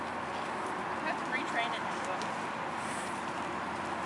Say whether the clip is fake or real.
real